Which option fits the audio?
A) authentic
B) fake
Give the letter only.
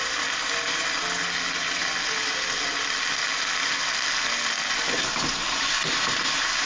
A